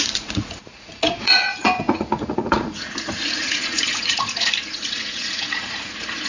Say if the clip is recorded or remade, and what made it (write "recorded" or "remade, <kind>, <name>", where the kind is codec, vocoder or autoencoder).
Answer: remade, vocoder, Vocos